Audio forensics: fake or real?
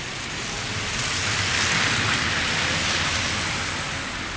real